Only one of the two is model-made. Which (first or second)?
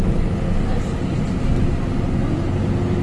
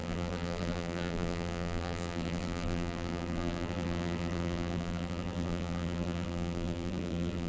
second